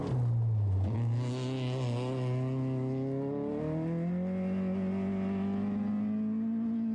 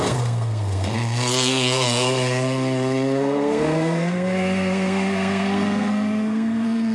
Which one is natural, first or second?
first